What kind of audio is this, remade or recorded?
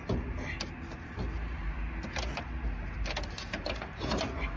recorded